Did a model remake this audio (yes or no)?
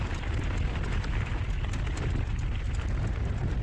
no